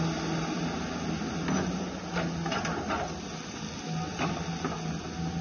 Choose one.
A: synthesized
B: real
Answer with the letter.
B